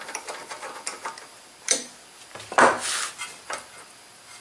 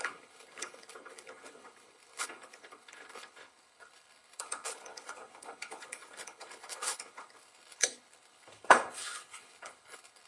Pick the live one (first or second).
first